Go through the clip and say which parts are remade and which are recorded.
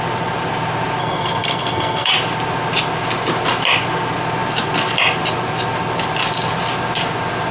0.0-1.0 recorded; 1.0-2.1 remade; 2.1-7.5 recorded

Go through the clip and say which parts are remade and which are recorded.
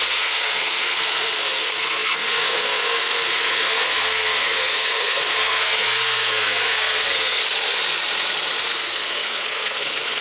0.0-7.4 remade; 7.4-8.6 recorded; 8.6-10.2 remade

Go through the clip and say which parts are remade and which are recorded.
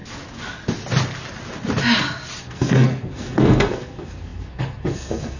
0.0-2.4 recorded; 2.4-5.4 remade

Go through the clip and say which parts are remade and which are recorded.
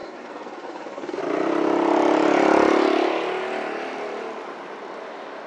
0.0-1.2 remade; 1.2-5.5 recorded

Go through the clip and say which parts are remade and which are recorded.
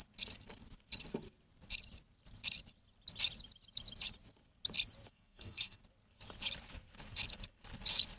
0.0-5.1 recorded; 5.1-5.8 remade; 5.8-8.2 recorded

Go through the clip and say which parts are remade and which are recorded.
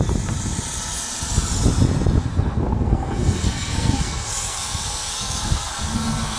0.0-2.3 recorded; 2.3-6.4 remade